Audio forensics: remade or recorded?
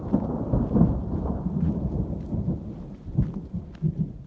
recorded